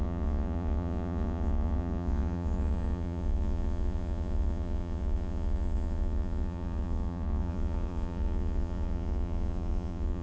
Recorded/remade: remade